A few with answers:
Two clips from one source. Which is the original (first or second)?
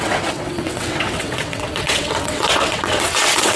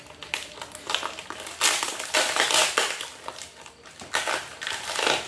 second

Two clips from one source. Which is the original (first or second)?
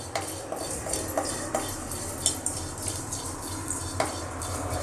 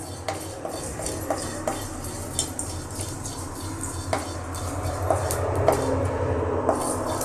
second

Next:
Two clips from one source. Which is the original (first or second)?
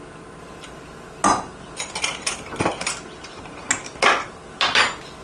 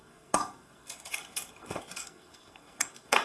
first